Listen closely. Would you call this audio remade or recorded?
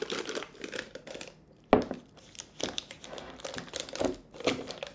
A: recorded